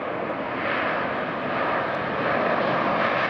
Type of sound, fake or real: real